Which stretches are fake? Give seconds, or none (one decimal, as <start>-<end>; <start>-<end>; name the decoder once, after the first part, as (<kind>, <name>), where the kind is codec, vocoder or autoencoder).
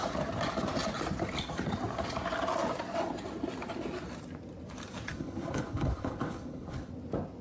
5.1-6.9 (codec, HILCodec)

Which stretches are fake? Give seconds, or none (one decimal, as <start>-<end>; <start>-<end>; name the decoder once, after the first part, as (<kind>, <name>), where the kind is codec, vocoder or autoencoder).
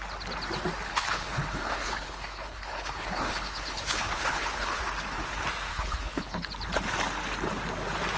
0.9-4.8 (codec, HILCodec); 5.7-6.5